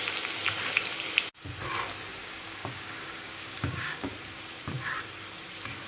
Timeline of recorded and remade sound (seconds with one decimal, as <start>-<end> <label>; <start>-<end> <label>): 0.0-2.2 recorded; 2.2-4.1 remade; 4.1-5.9 recorded